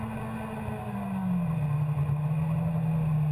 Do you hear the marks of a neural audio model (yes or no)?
no